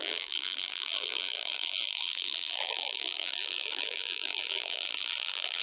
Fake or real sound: fake